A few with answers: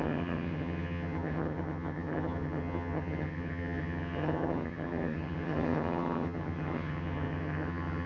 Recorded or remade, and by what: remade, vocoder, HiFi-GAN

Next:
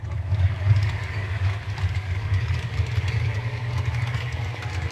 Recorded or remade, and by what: remade, codec, DAC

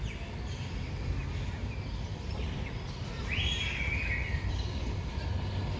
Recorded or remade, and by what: recorded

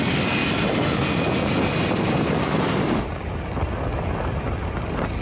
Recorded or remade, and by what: recorded